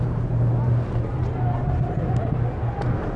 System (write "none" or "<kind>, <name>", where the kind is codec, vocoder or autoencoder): none